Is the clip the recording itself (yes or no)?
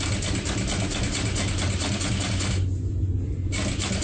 yes